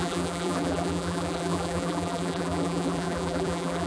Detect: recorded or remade remade